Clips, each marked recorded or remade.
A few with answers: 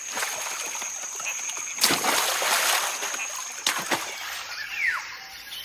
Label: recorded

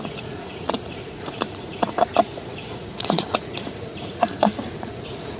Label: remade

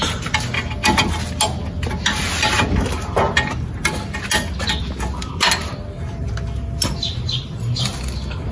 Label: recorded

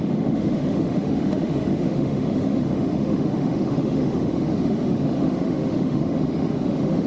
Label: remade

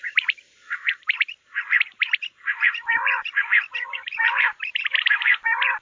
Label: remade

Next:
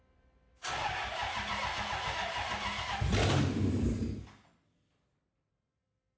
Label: recorded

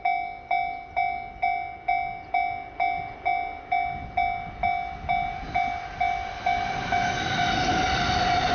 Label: recorded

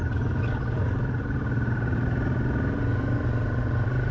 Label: recorded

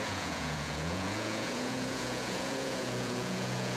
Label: remade